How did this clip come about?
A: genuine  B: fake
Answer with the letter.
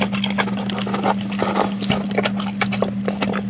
A